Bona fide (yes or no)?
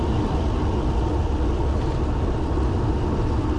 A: yes